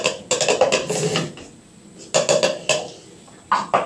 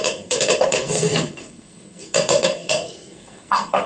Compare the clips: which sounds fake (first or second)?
second